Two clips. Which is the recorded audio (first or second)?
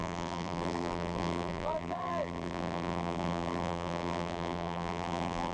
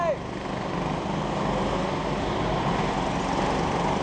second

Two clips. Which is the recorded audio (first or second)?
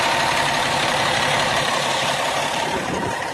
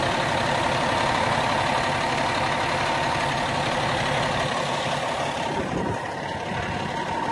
second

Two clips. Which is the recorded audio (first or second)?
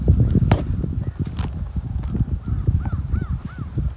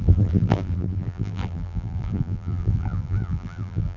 first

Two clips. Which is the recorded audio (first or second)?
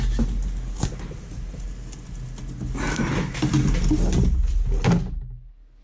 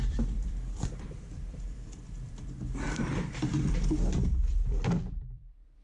first